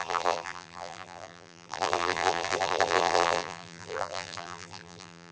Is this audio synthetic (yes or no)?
yes